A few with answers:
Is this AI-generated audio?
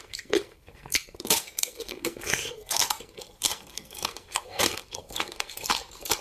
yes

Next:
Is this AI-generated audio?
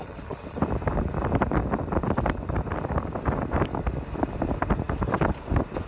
yes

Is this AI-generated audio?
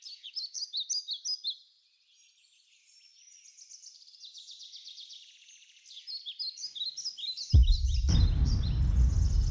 no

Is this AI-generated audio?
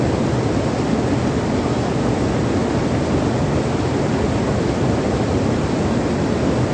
no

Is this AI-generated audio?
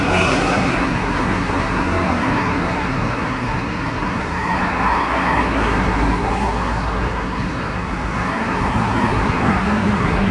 yes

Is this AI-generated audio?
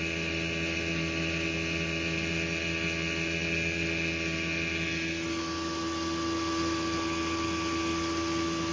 no